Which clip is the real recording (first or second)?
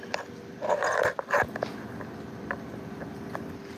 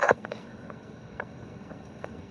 first